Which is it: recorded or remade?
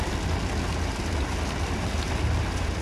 recorded